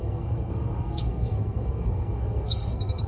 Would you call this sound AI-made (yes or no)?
yes